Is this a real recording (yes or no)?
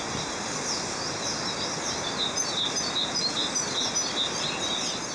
yes